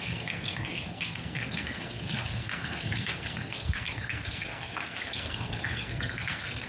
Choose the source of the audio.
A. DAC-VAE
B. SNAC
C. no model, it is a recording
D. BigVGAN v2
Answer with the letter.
B